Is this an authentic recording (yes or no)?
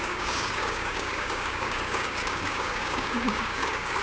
no